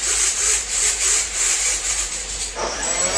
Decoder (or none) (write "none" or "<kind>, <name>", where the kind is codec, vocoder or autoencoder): vocoder, BigVGAN v2